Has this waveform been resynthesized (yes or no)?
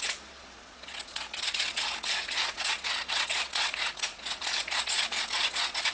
yes